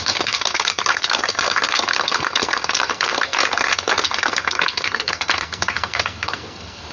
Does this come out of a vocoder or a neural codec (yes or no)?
yes